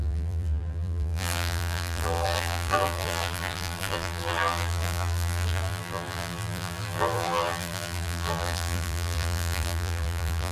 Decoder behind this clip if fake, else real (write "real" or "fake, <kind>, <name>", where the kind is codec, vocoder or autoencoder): fake, vocoder, BigVGAN v2